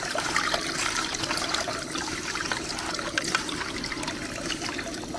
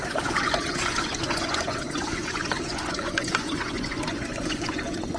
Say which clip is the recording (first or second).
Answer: first